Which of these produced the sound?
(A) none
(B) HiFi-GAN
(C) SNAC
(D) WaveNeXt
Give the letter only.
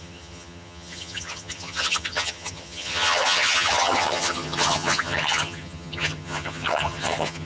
B